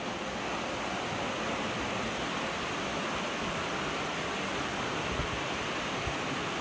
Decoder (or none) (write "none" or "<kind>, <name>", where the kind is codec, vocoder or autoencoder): none